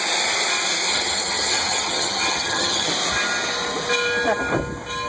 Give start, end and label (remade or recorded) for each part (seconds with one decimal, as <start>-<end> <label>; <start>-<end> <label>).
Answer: 0.0-0.9 recorded; 0.9-2.9 remade; 2.9-5.1 recorded